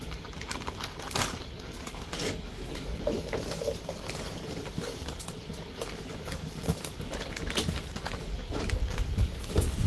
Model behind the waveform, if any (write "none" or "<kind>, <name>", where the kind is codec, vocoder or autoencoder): codec, DAC